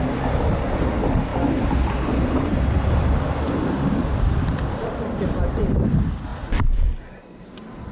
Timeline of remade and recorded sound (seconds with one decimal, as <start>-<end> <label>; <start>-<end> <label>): 0.0-1.3 recorded; 1.3-5.8 remade; 5.8-6.3 recorded; 6.3-7.5 remade; 7.5-7.9 recorded